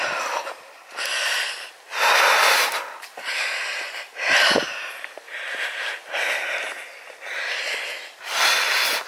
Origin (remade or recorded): recorded